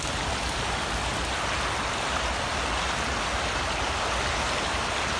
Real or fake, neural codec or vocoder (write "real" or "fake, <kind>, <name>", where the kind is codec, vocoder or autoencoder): real